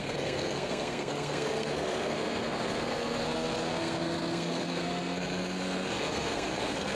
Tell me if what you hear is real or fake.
fake